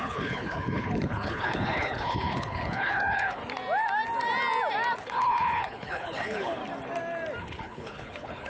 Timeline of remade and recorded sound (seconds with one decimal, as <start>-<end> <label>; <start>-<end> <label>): 0.0-3.4 remade; 3.4-5.0 recorded; 5.0-6.6 remade; 6.6-7.4 recorded; 7.4-8.5 remade